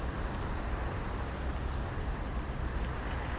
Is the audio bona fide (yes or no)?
yes